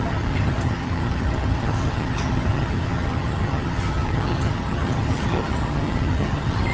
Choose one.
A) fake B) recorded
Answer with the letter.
A